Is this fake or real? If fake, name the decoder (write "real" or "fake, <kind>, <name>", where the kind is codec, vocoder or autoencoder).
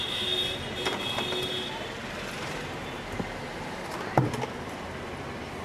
real